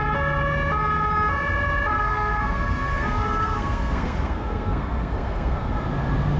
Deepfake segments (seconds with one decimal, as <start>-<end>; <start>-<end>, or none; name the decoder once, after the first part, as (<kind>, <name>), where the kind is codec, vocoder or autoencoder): 1.9-5.7 (codec, SNAC)